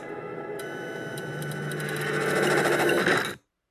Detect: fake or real real